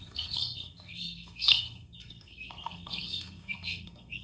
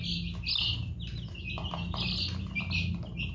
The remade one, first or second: first